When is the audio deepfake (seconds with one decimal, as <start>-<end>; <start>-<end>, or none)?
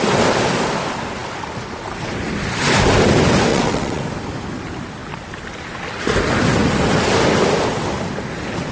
3.5-4.0